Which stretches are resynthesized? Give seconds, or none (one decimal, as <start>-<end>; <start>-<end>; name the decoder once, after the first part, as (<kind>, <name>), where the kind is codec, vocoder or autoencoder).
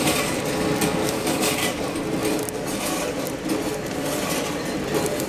1.0-1.7 (codec, DAC)